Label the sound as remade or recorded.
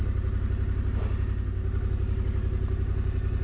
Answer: recorded